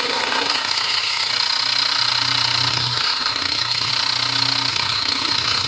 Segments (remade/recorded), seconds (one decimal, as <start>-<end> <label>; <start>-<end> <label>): 0.0-1.3 remade; 1.3-2.7 recorded; 2.7-3.9 remade; 3.9-4.7 recorded; 4.7-5.7 remade